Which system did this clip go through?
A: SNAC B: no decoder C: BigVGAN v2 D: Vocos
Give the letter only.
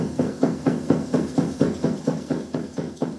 A